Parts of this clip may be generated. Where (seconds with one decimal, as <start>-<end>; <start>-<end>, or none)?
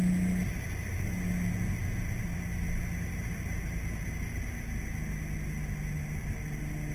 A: none